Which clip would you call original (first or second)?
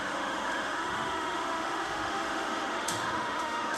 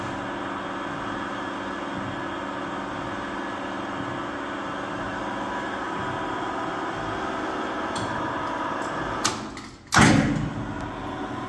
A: second